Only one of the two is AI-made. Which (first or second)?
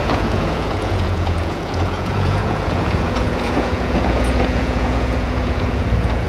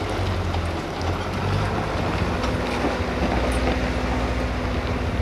first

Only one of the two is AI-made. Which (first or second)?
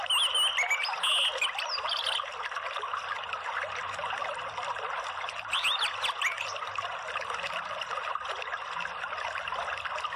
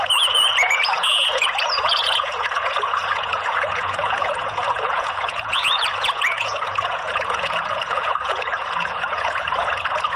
second